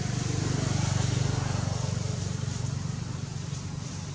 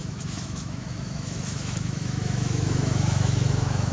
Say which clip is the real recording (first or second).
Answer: first